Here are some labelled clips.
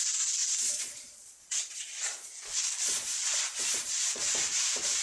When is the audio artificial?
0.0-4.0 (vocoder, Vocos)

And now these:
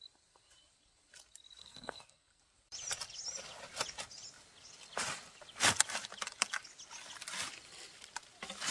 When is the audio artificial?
1.6-2.4 (codec, SNAC)

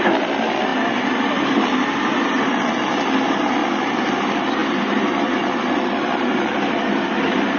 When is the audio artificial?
none